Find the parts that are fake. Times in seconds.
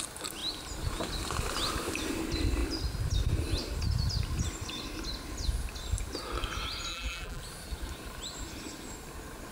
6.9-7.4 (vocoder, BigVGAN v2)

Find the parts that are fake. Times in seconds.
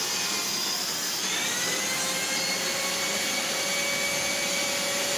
none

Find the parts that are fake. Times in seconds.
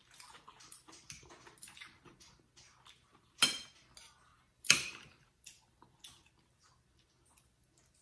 0.0-1.1 (vocoder, BigVGAN v2); 3.1-3.7; 4.3-6.0